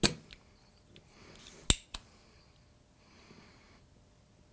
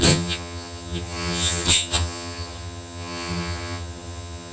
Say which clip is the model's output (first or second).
second